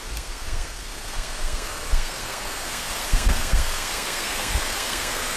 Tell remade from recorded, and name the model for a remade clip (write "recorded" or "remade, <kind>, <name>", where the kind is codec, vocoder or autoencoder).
remade, codec, SNAC